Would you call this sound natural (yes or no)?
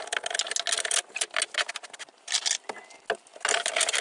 yes